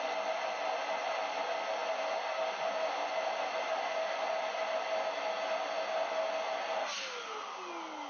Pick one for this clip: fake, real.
real